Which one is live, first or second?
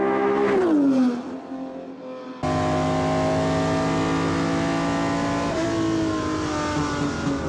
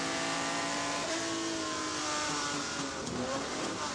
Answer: first